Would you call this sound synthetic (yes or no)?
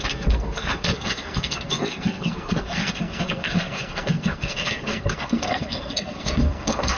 yes